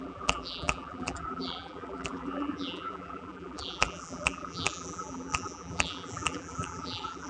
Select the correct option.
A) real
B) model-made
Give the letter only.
B